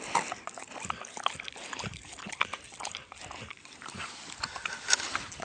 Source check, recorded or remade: recorded